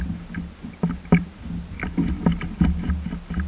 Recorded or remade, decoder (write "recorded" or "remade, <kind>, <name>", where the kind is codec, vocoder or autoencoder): recorded